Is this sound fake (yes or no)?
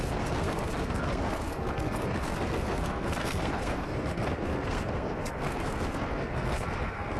yes